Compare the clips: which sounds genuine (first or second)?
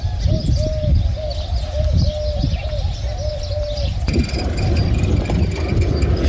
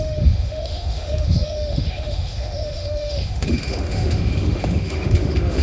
first